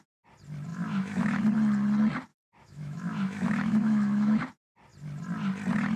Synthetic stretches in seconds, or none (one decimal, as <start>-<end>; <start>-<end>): 0.7-1.4; 2.3-4.4